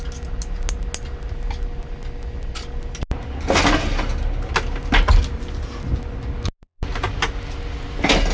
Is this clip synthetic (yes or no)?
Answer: no